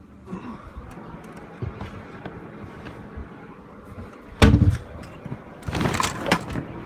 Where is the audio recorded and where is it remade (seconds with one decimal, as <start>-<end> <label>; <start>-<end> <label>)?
0.0-6.9 recorded